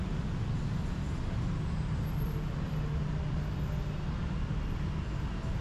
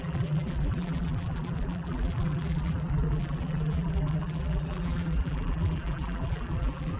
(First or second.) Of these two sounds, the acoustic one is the first